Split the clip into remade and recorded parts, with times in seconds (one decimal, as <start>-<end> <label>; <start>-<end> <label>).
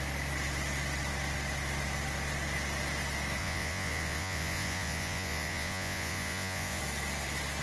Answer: 0.0-3.4 recorded; 3.4-6.8 remade; 6.8-7.6 recorded